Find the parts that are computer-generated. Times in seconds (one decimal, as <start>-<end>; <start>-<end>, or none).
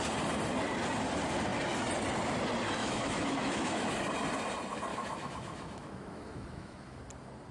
2.8-4.0; 4.9-7.0